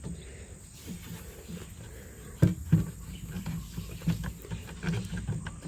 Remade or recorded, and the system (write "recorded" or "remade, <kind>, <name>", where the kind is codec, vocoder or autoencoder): recorded